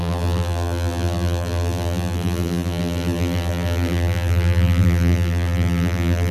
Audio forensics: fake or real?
fake